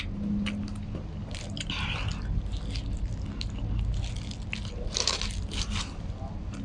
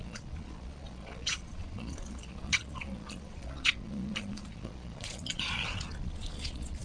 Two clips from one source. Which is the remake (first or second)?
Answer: second